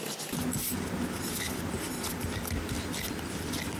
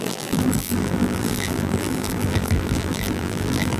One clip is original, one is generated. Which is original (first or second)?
first